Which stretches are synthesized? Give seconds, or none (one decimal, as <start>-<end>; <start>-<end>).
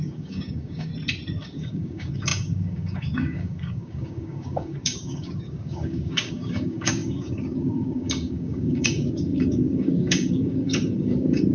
0.0-0.9; 1.4-11.5